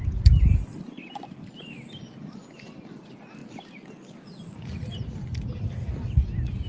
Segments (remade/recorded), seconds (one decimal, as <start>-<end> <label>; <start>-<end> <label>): 0.0-6.7 recorded